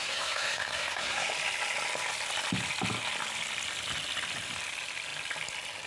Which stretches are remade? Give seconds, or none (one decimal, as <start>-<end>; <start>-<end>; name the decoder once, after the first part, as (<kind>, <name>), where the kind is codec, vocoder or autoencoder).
0.0-1.3 (codec, SNAC)